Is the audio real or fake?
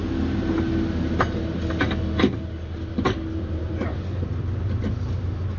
real